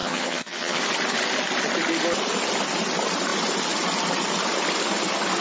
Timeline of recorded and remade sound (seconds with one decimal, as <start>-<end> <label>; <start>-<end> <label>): 0.0-0.8 remade; 0.8-5.4 recorded